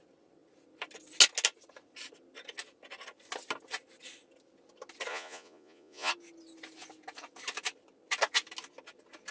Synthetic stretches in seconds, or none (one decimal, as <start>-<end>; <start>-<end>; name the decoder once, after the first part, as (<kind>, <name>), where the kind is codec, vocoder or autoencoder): 5.1-6.1 (vocoder, Vocos)